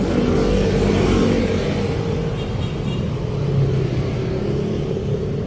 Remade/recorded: recorded